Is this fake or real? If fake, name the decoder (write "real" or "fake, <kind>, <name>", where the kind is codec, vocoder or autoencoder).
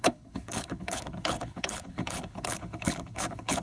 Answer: fake, codec, HILCodec